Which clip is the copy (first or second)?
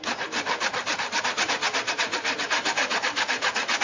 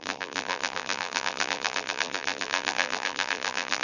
second